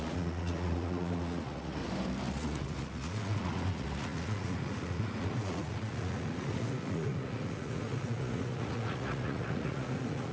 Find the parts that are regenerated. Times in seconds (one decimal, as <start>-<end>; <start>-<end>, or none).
0.0-1.8; 2.3-10.3